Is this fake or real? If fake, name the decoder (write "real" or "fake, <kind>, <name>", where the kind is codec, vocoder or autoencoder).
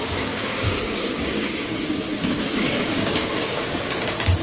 fake, codec, DAC